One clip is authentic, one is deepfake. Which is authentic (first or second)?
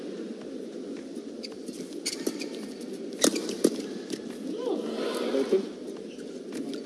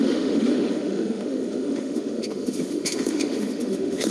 first